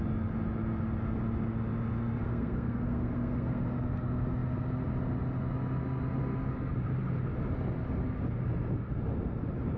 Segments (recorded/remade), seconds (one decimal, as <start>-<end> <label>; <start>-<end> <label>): 0.0-2.2 recorded; 2.2-3.6 remade; 3.6-9.8 recorded